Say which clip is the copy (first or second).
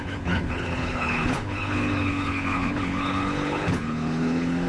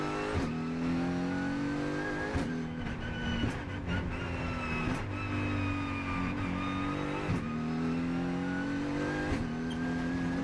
first